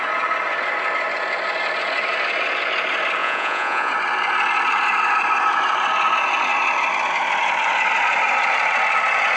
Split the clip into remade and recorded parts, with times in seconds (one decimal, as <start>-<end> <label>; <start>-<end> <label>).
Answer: 0.0-3.2 recorded; 3.2-3.9 remade; 3.9-9.4 recorded